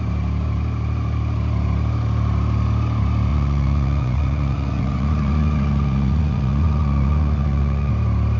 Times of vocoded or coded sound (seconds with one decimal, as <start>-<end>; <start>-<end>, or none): 3.3-7.9

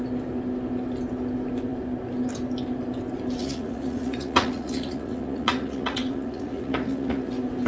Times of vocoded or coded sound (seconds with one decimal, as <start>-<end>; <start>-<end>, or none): 3.4-7.3

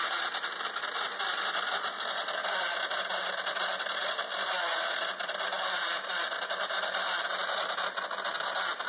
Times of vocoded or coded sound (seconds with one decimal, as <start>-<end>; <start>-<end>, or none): none

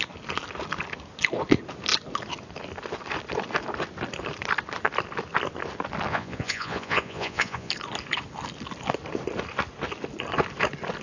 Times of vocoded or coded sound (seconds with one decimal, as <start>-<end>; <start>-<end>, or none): 6.1-7.7